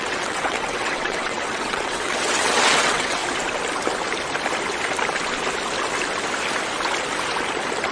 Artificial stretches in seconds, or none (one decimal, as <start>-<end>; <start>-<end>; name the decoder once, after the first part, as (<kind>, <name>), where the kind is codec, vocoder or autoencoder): 0.0-3.2 (vocoder, WaveNeXt)